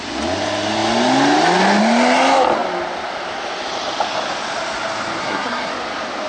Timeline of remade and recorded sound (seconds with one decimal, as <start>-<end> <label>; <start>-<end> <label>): 0.0-5.2 recorded; 5.2-5.7 remade; 5.7-6.3 recorded